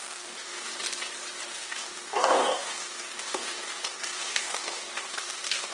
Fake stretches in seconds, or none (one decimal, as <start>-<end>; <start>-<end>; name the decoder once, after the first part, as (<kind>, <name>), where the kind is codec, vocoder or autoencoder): 0.0-0.7 (codec, DAC); 1.5-5.7